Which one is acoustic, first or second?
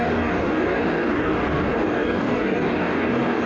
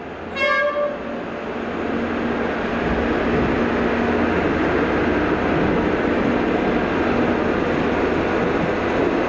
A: second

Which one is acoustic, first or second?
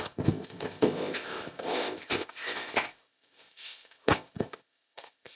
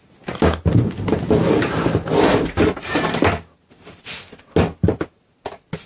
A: second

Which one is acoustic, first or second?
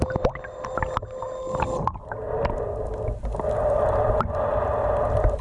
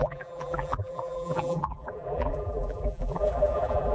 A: first